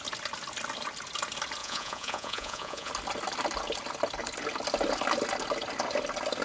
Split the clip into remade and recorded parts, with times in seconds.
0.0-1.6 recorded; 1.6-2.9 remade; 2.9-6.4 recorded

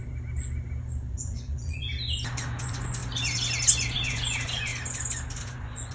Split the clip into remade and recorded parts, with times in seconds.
0.0-1.1 recorded; 1.1-1.9 remade; 1.9-2.6 recorded; 2.6-3.0 remade; 3.0-3.9 recorded; 3.9-4.7 remade; 4.7-5.4 recorded; 5.4-5.9 remade

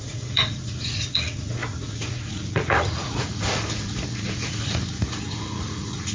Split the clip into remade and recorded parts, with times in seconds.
0.0-6.1 remade

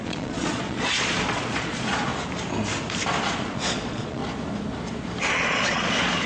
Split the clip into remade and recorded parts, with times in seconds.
0.0-2.1 remade; 2.1-3.3 recorded; 3.3-4.2 remade; 4.2-5.3 recorded; 5.3-6.3 remade